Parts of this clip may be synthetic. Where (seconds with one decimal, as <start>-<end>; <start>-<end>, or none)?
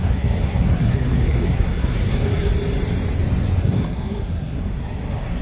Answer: 0.0-2.5; 3.6-5.4